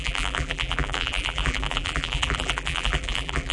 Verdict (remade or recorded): remade